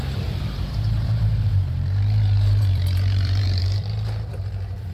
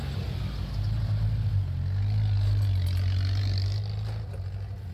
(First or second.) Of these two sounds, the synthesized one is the first